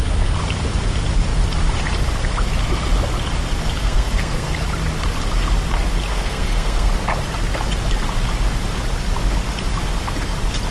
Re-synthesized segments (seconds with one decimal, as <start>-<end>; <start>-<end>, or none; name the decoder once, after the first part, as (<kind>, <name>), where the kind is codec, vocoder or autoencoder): 3.8-4.5 (codec, SNAC); 6.1-6.9